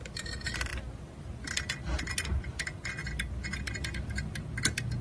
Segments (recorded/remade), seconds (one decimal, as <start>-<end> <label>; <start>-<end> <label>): 0.0-5.0 recorded